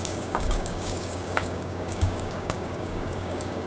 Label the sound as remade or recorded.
remade